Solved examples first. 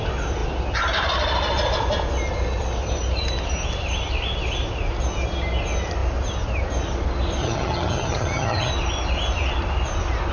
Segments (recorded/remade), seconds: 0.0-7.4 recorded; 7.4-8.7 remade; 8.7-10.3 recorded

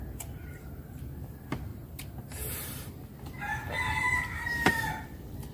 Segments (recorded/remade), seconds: 0.0-1.7 recorded; 1.7-2.2 remade; 2.2-5.5 recorded

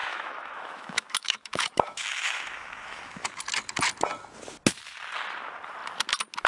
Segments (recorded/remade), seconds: 0.0-3.4 remade; 3.4-6.5 recorded

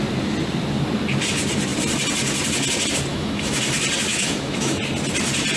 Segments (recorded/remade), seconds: 0.0-3.1 recorded; 3.1-3.6 remade; 3.6-4.1 recorded; 4.1-4.8 remade; 4.8-5.6 recorded